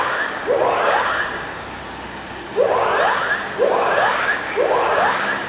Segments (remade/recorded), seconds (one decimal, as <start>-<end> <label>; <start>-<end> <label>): 0.0-2.9 remade; 2.9-3.7 recorded; 3.7-5.5 remade